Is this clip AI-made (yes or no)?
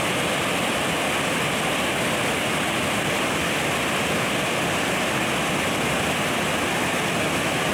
no